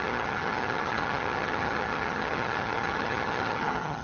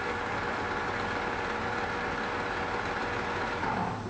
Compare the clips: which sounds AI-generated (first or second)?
first